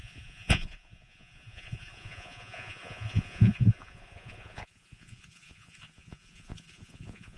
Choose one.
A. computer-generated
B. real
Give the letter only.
A